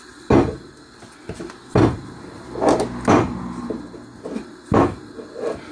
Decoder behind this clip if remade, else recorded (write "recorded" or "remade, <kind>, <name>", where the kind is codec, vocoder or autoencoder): recorded